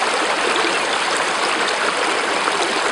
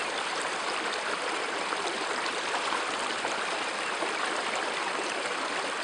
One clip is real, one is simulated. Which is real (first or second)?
first